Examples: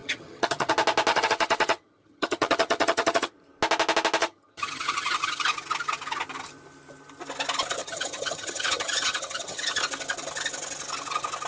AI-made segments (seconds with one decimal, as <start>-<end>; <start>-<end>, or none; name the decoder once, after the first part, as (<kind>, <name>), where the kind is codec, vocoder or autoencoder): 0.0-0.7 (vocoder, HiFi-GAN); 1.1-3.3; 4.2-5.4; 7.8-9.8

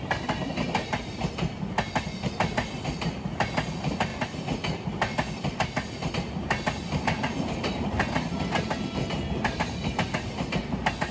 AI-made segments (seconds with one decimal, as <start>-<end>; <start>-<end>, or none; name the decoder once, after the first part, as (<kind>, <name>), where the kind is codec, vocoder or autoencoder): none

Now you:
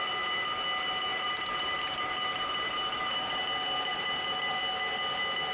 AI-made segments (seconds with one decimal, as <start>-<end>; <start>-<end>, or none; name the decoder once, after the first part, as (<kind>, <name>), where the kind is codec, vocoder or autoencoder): 1.1-3.4 (vocoder, BigVGAN v2); 3.9-4.4

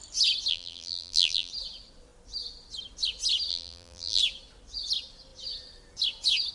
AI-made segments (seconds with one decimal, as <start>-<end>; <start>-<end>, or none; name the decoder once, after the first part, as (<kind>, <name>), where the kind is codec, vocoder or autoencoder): 0.5-1.5 (vocoder, BigVGAN v2); 3.5-4.2